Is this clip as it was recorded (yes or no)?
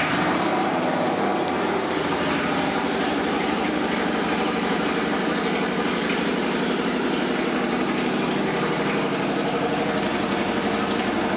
no